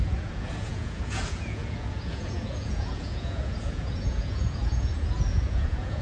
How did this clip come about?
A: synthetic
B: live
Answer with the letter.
A